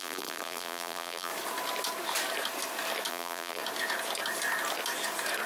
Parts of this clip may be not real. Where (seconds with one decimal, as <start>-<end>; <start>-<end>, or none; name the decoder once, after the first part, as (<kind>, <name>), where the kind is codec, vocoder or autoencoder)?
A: 0.0-1.3 (vocoder, BigVGAN v2); 3.1-3.6